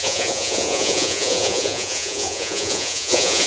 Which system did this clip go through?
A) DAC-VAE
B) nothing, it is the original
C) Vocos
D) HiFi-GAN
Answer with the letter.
C